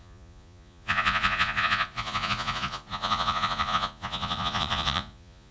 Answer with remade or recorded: remade